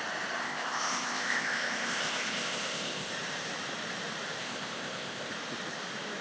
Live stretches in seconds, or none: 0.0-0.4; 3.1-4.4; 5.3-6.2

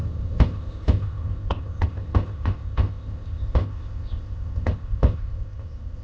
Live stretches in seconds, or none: none

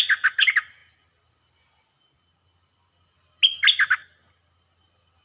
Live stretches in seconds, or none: 0.0-5.2

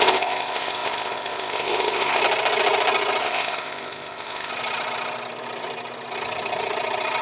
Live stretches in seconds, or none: 2.2-3.2; 4.5-7.2

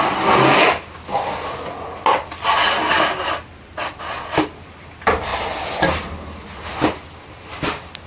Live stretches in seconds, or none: 0.0-8.1

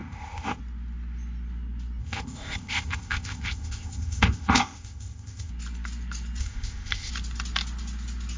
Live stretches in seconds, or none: 0.6-2.0; 5.5-6.4; 7.1-8.4

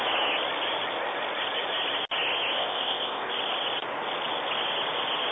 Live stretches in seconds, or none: 0.0-2.6; 3.3-5.3

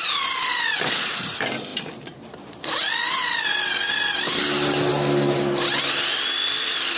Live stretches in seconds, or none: 0.0-7.0